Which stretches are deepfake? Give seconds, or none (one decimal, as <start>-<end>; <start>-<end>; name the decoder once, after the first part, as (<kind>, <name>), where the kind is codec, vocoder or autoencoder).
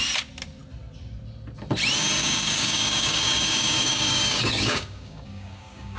2.2-6.0 (codec, DAC)